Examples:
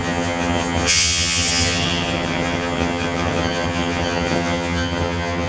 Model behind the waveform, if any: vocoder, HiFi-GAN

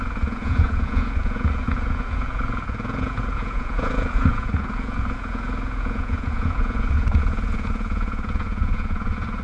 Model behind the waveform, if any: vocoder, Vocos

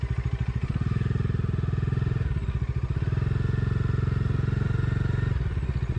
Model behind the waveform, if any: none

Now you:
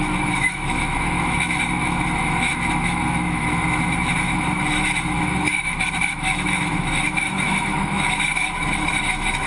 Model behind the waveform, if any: autoencoder, DAC-VAE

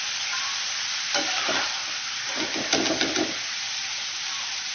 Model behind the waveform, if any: none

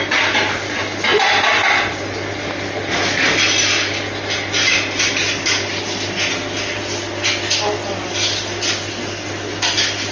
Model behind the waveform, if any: none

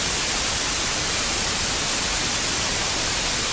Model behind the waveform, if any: none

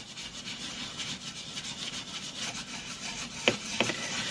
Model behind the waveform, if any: none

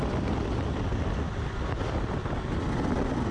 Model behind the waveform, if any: vocoder, BigVGAN v2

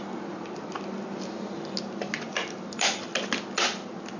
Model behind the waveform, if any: none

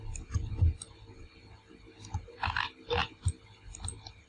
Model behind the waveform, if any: none